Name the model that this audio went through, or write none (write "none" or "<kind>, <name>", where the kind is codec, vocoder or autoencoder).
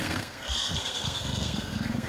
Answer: codec, SNAC